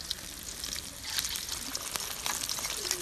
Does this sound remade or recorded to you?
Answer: recorded